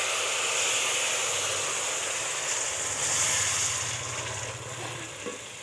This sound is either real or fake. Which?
real